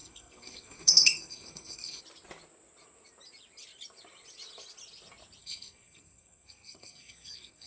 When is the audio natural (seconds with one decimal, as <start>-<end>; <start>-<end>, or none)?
2.0-5.4